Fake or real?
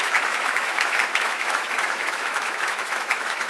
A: fake